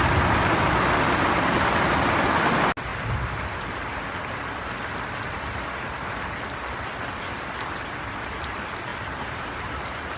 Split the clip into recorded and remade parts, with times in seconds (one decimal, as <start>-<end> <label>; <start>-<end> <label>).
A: 0.0-10.2 recorded